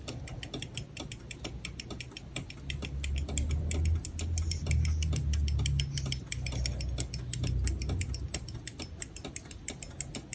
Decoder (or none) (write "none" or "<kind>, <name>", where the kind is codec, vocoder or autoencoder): none